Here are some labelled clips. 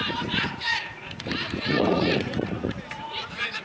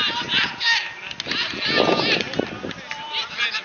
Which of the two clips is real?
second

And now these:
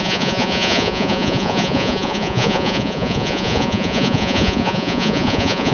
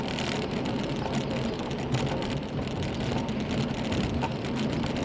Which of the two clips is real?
second